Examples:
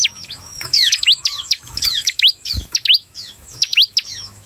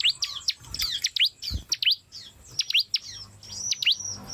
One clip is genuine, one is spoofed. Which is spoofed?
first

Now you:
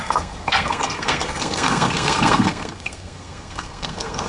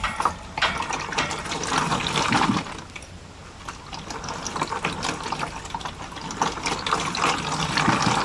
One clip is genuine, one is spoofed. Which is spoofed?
first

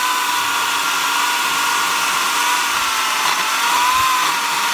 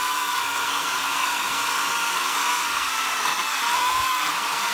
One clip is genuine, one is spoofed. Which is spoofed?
second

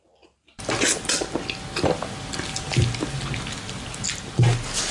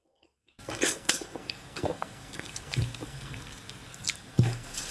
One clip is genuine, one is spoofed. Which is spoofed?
second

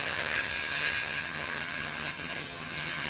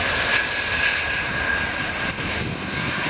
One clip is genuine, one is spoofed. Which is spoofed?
first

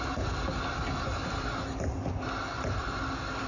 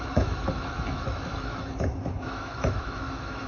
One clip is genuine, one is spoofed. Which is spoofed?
second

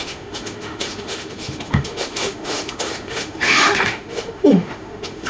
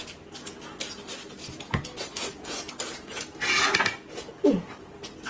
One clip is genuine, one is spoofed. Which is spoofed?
first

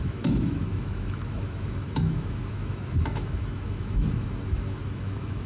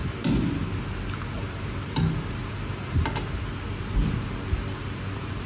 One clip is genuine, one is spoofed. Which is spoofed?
first